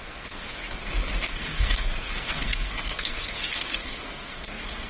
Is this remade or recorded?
remade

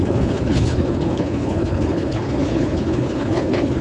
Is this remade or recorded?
remade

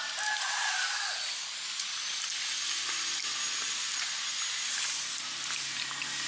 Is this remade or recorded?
recorded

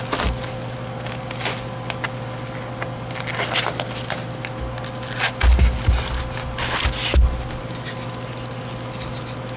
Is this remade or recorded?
recorded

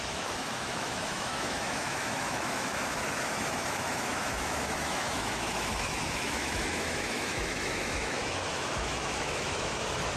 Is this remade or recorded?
remade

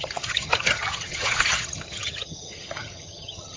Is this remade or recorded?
remade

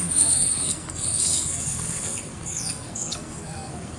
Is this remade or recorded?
remade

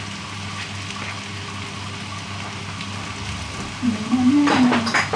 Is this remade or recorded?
recorded